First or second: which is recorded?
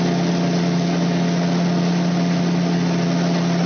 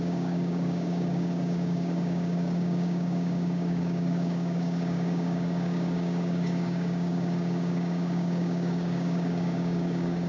first